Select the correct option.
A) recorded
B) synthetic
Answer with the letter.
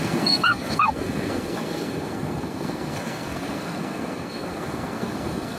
B